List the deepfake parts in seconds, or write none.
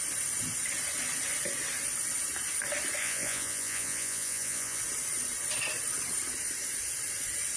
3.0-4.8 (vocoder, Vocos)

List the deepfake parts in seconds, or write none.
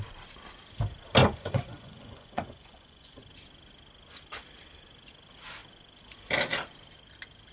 1.2-3.2 (vocoder, Vocos)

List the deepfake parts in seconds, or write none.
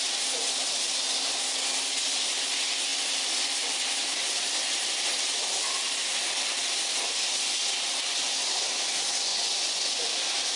9.3-10.0 (vocoder, Vocos)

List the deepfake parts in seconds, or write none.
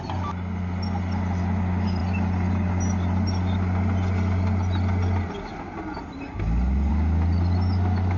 none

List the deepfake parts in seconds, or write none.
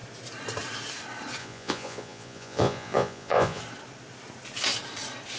1.4-3.6 (vocoder, Vocos)